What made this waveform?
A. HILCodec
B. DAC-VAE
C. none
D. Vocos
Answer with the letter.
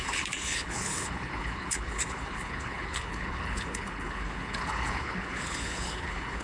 A